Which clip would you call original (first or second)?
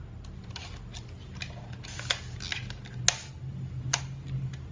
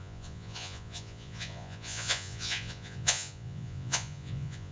first